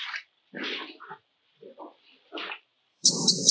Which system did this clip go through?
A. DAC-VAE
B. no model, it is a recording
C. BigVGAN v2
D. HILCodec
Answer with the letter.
C